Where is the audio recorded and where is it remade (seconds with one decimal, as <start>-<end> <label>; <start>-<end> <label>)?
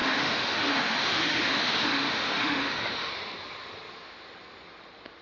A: 0.0-3.1 remade; 3.1-5.2 recorded